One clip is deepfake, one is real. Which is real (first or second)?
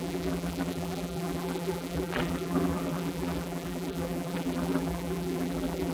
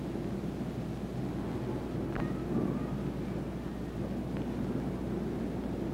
second